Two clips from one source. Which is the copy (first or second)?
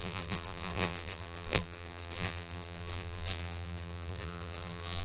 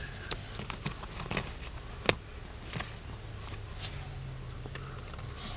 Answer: first